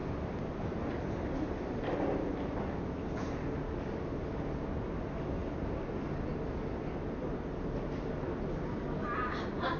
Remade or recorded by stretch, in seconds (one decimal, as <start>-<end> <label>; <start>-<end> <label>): 0.0-9.8 recorded